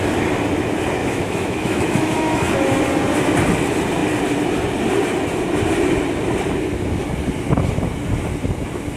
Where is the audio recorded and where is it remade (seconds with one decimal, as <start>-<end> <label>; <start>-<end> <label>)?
0.0-1.0 recorded; 1.0-2.5 remade; 2.5-9.0 recorded